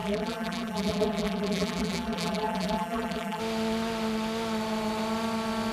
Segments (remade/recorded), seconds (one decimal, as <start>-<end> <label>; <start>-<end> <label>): 0.0-3.4 remade; 3.4-5.7 recorded